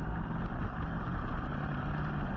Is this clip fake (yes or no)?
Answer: no